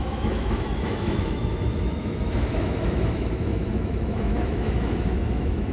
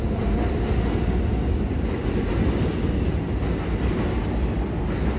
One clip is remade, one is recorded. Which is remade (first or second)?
first